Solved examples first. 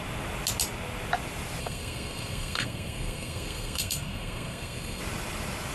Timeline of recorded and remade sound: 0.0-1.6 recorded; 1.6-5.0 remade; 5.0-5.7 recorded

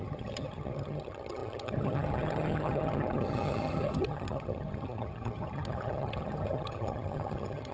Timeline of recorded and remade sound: 0.0-7.7 remade

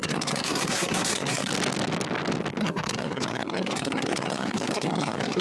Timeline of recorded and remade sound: 0.0-1.5 remade; 1.5-2.6 recorded; 2.6-5.4 remade